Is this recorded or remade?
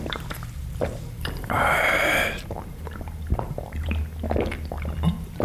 remade